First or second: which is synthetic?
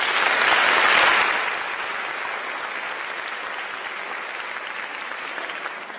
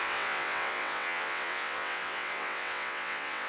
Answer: second